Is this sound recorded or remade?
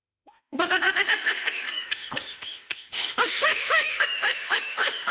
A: remade